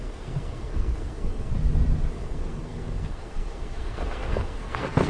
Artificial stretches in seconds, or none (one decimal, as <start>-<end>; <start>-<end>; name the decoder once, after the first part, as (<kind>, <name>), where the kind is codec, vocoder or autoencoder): 0.0-1.5 (codec, SNAC); 2.1-5.1